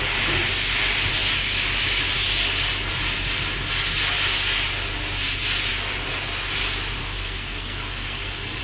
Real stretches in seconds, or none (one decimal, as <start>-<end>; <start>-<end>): 0.0-7.0